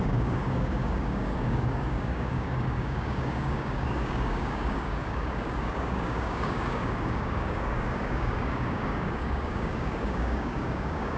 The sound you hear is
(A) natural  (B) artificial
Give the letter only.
B